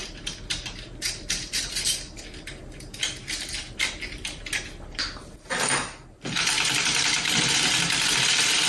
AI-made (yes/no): no